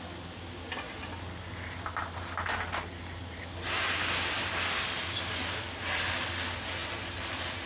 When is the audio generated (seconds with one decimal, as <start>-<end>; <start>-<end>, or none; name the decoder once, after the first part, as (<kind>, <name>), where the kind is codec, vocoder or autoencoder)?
none